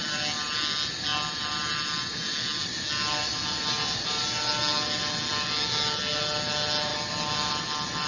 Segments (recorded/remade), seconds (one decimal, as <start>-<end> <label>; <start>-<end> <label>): 0.0-8.1 recorded